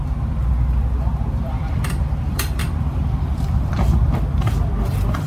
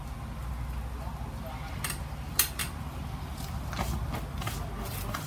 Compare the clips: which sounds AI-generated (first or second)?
first